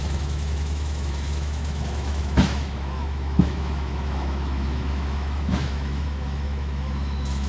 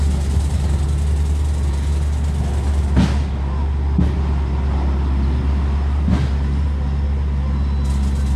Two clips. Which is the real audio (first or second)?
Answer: second